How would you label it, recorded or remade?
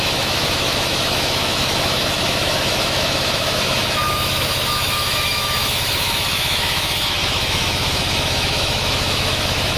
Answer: remade